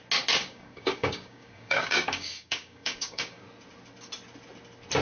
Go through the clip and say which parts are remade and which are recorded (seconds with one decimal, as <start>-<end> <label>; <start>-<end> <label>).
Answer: 0.0-0.4 recorded; 0.4-3.4 remade; 3.4-5.0 recorded